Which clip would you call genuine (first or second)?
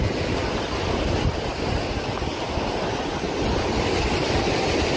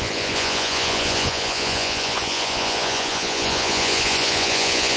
first